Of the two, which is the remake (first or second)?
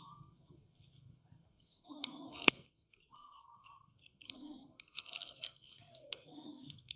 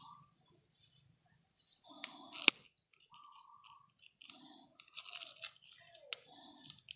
first